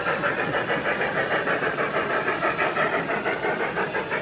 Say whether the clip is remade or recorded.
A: recorded